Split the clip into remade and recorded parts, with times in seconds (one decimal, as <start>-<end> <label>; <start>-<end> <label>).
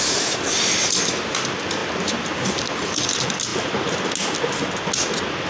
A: 0.0-5.5 recorded